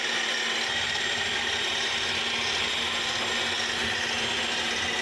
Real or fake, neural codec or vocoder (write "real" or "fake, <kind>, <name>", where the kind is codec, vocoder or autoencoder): real